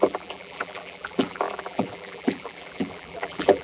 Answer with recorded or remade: remade